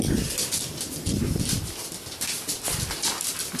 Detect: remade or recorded recorded